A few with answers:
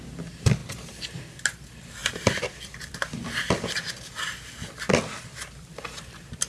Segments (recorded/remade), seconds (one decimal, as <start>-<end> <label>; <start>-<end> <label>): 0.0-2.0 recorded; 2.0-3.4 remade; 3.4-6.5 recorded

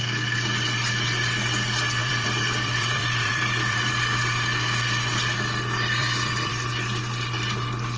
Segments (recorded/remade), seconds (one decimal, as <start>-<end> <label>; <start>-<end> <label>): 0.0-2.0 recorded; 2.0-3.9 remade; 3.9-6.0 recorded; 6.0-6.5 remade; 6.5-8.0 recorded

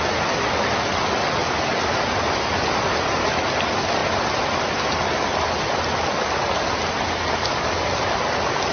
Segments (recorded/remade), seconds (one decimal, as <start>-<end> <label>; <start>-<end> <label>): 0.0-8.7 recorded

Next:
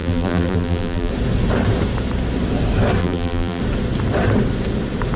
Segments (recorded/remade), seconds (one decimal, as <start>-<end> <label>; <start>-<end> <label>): 0.0-1.1 remade; 1.1-3.0 recorded; 3.0-3.6 remade; 3.6-5.2 recorded

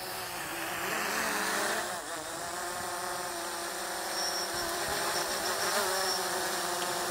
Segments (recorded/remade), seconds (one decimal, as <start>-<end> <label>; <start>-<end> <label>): 0.0-0.5 remade; 0.5-1.8 recorded; 1.8-7.1 remade

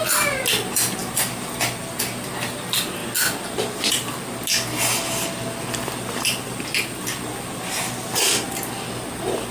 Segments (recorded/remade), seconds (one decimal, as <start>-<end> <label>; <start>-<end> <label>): 0.0-9.5 recorded

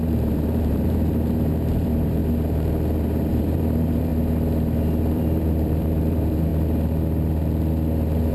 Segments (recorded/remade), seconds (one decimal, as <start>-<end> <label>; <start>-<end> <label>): 0.0-2.2 remade; 2.2-3.3 recorded; 3.3-4.1 remade; 4.1-5.0 recorded; 5.0-6.5 remade; 6.5-8.3 recorded